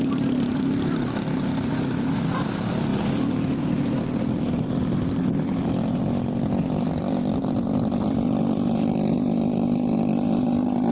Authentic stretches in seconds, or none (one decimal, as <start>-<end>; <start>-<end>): 0.0-10.9